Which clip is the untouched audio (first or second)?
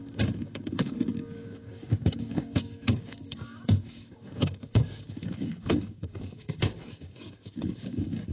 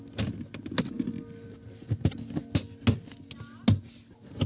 second